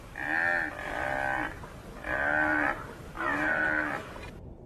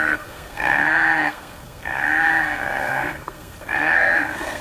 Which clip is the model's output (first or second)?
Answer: second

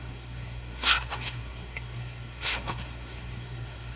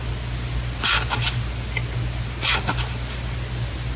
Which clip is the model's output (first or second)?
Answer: first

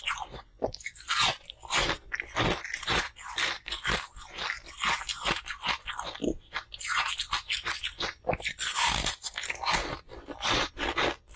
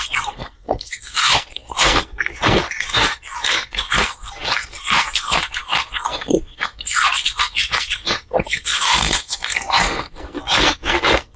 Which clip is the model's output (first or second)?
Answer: second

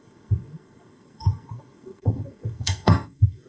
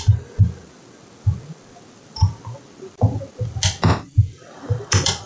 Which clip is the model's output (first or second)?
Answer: first